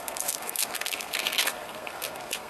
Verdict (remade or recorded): remade